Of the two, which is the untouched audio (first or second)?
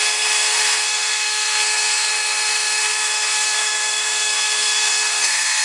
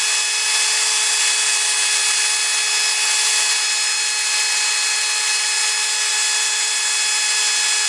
second